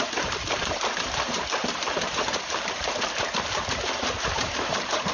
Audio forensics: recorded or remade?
remade